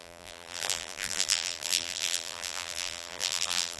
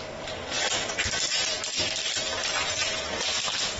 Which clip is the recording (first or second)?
second